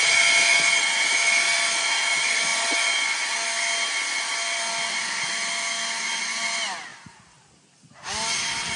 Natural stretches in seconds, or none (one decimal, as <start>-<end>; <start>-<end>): 0.0-8.8